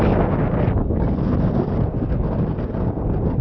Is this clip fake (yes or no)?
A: no